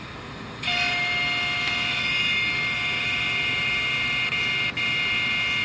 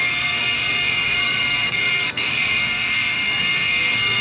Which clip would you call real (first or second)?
first